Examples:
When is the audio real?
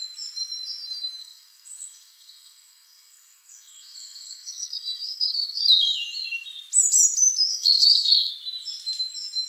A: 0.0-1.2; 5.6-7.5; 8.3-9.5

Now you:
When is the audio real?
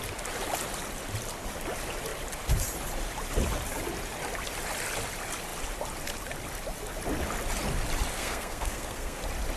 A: 0.0-8.1; 9.2-9.6